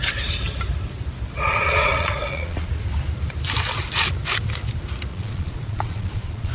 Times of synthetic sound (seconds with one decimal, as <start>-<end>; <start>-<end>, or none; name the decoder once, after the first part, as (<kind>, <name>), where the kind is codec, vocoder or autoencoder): 1.5-2.7 (vocoder, Vocos); 5.1-6.5